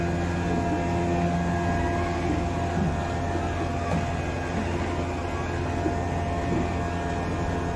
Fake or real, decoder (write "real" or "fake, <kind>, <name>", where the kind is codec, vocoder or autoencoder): real